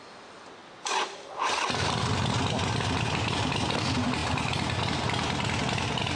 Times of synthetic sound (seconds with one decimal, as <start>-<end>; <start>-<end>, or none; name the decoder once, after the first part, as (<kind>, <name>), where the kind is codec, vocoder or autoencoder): none